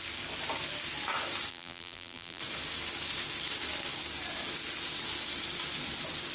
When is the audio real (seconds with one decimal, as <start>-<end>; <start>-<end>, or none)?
0.0-1.5; 2.4-6.3